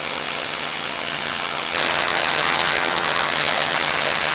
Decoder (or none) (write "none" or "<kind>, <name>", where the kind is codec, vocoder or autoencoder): vocoder, HiFi-GAN